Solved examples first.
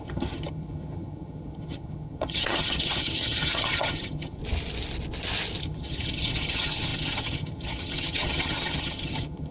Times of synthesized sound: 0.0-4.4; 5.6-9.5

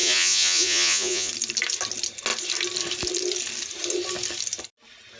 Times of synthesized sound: 0.0-1.3

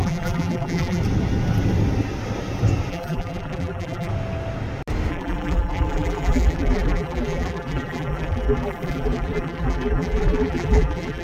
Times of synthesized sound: 0.0-1.0; 2.9-4.1; 5.1-11.2